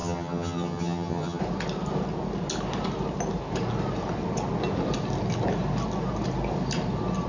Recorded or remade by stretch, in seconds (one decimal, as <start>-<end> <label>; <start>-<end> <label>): 0.0-1.4 remade; 1.4-7.3 recorded